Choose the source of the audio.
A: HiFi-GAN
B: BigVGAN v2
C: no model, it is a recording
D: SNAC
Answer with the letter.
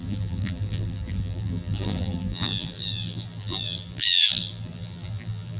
B